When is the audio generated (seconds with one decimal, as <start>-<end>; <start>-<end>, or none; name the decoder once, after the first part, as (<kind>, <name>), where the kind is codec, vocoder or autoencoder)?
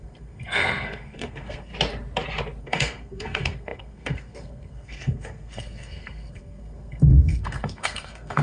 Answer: 0.0-1.7 (codec, SNAC); 2.6-8.4